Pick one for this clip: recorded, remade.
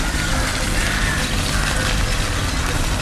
recorded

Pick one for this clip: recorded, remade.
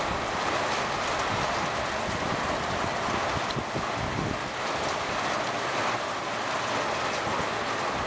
recorded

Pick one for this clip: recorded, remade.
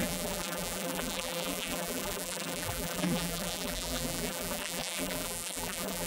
remade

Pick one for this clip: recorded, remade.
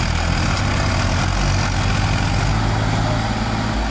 recorded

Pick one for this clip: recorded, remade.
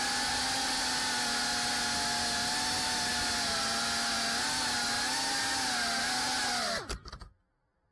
recorded